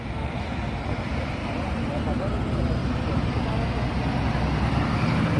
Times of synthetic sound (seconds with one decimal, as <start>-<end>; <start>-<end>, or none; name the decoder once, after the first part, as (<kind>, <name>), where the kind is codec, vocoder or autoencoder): 1.4-2.0 (vocoder, BigVGAN v2); 2.8-3.5